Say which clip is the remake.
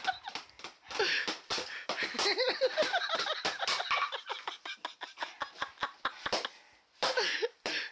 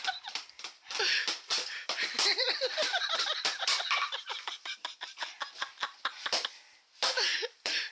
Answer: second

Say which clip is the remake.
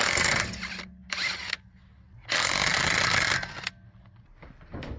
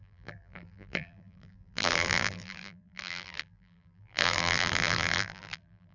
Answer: second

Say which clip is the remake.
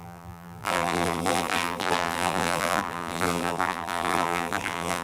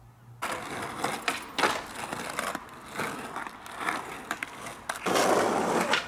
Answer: first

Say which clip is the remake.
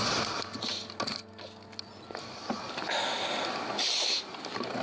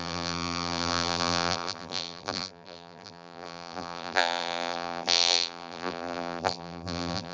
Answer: second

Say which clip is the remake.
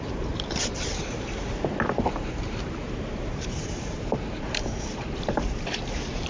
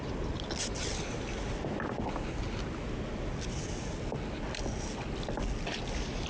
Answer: first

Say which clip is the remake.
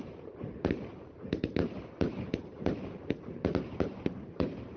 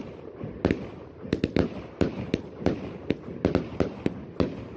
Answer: first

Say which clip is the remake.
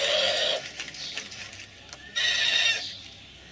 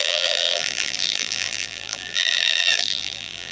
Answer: second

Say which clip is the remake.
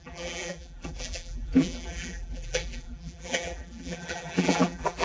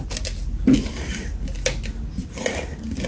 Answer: first